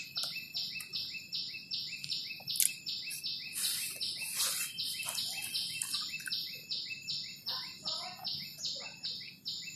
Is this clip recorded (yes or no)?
yes